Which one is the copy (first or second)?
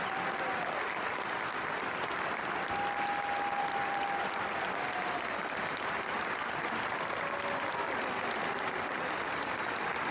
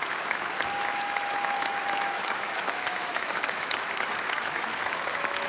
second